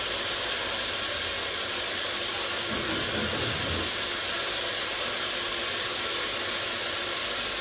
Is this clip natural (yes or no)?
yes